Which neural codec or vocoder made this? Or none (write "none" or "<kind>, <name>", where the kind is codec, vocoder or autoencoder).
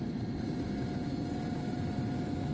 none